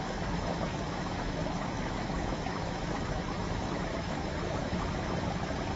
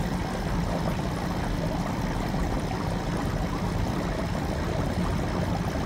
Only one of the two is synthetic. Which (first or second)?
first